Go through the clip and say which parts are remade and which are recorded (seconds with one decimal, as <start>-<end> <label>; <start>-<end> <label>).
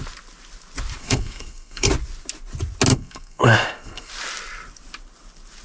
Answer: 0.0-1.0 recorded; 1.0-1.9 remade; 1.9-2.9 recorded; 2.9-4.1 remade; 4.1-5.6 recorded